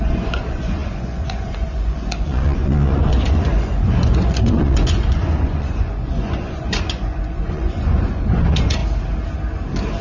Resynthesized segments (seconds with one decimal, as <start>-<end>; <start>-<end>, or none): 0.0-8.8